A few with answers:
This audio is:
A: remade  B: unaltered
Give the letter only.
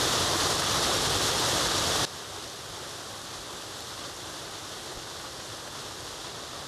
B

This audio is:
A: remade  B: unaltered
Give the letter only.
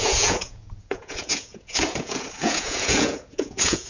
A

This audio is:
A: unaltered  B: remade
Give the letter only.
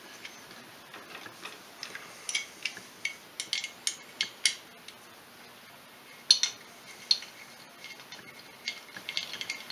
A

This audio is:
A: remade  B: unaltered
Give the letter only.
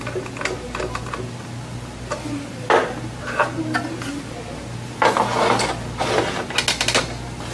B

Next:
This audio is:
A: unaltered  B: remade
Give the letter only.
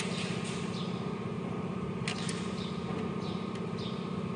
A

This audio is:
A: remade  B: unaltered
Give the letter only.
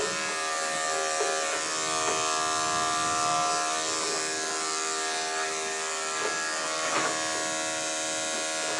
B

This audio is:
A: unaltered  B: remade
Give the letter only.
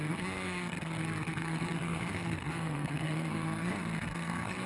B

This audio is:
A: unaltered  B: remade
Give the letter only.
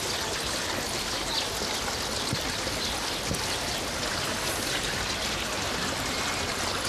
A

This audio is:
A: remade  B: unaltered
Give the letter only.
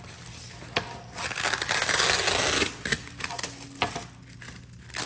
B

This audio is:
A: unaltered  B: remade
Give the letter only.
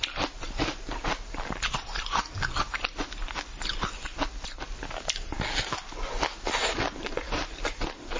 A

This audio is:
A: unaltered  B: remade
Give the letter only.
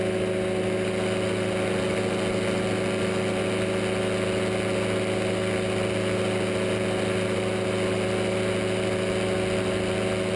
A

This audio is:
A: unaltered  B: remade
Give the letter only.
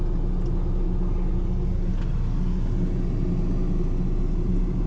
A